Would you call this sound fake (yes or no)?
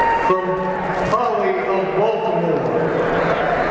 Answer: no